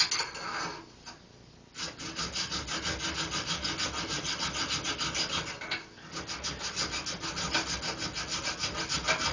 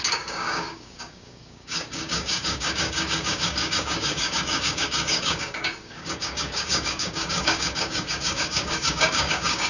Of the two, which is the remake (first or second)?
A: second